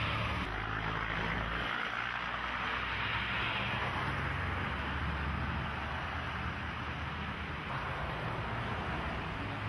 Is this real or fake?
real